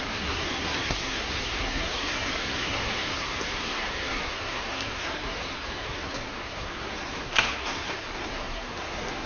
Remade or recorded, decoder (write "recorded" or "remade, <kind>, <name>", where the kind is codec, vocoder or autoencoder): remade, codec, SNAC